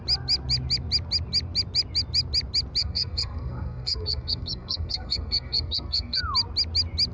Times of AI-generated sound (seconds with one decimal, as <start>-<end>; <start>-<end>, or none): 2.8-6.2